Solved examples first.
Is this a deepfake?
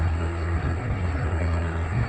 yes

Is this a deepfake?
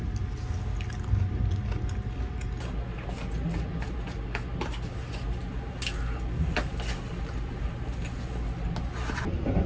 no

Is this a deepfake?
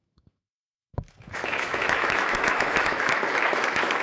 yes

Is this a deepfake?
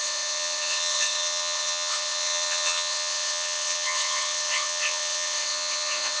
yes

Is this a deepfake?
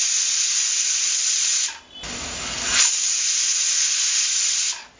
no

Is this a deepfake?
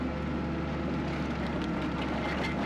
no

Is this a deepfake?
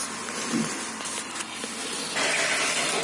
no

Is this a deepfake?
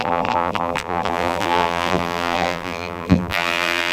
yes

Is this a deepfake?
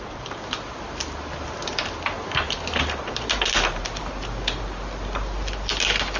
no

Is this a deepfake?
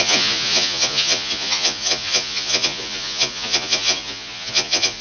yes